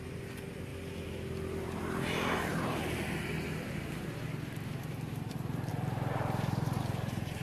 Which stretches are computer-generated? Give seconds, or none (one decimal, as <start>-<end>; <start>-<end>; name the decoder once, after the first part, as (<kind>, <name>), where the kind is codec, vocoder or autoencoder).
0.0-0.7 (vocoder, BigVGAN v2); 1.6-2.5; 3.5-7.4